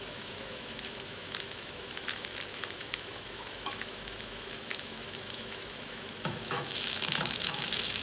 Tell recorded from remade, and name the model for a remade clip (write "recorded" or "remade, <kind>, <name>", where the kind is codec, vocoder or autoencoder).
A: remade, autoencoder, DAC-VAE